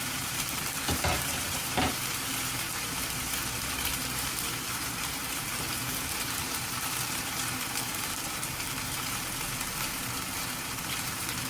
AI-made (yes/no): yes